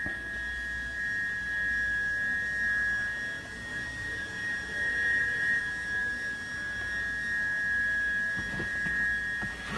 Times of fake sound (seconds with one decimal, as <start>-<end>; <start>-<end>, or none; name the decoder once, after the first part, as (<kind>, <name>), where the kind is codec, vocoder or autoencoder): 3.7-5.6 (vocoder, Vocos)